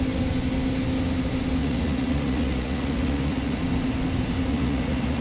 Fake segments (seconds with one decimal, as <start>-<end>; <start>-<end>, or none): 1.6-3.6; 4.5-5.2